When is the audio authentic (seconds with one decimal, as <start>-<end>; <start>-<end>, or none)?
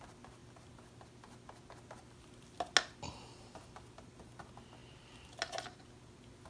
0.0-6.5